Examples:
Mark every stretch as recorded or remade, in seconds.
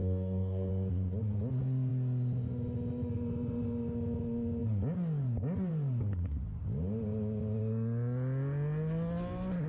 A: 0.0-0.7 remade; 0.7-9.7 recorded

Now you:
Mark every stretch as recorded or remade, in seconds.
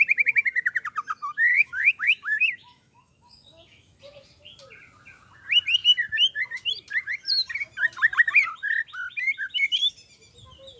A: 0.0-1.5 recorded; 1.5-4.0 remade; 4.0-10.8 recorded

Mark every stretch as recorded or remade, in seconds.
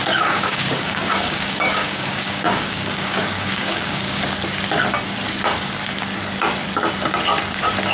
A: 0.0-4.2 remade; 4.2-7.9 recorded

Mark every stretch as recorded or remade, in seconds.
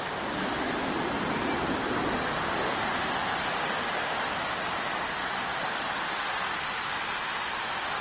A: 0.0-5.5 recorded; 5.5-6.2 remade; 6.2-8.0 recorded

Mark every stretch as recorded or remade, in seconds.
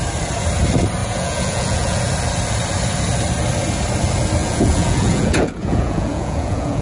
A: 0.0-1.0 recorded; 1.0-2.1 remade; 2.1-4.4 recorded; 4.4-6.8 remade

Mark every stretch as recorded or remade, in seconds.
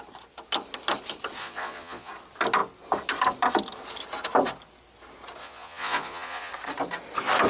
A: 0.0-1.4 recorded; 1.4-2.1 remade; 2.1-5.4 recorded; 5.4-6.5 remade; 6.5-7.5 recorded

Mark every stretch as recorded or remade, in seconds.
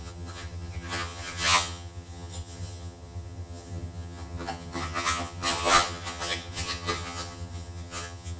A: 0.0-8.4 remade